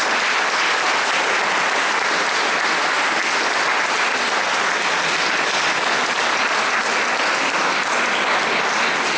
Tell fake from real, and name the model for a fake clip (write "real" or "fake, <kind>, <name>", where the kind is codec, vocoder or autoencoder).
real